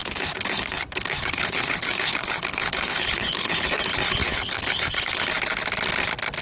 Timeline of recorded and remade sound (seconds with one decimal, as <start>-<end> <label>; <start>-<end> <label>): 0.0-3.8 remade; 3.8-4.2 recorded; 4.2-5.2 remade; 5.2-6.4 recorded